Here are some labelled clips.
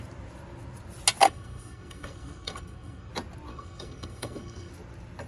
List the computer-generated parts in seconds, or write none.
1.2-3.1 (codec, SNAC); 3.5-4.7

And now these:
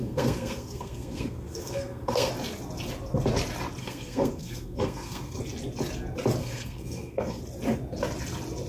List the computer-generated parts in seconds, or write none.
0.0-2.3 (codec, SNAC); 3.8-5.4; 6.4-7.4

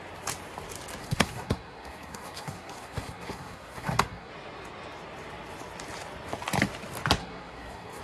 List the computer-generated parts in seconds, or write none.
1.0-4.3 (codec, SNAC); 7.2-8.0

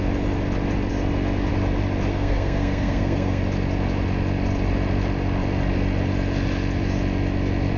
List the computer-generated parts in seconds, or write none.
2.1-3.4 (codec, SNAC)

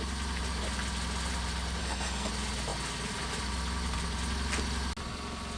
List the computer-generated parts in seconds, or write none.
1.8-2.3 (codec, SNAC)